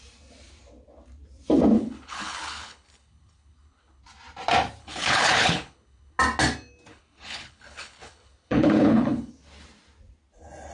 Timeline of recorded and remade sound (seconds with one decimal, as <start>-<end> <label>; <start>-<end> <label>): 0.0-1.7 recorded; 1.7-4.0 remade; 4.0-4.8 recorded; 4.8-6.2 remade; 6.2-6.9 recorded; 6.9-9.3 remade; 9.3-10.7 recorded